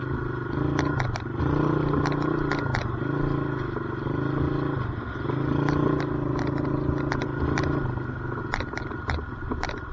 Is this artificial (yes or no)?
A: no